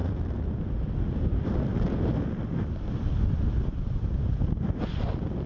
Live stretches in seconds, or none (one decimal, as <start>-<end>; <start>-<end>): 0.0-5.5